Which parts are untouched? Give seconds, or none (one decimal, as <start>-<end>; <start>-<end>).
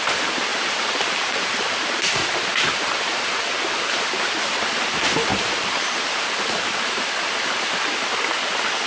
0.0-0.5; 3.4-5.3; 7.0-8.9